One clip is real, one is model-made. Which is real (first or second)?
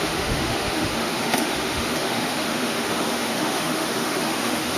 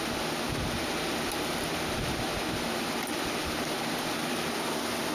second